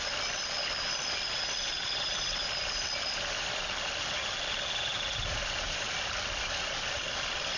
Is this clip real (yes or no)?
yes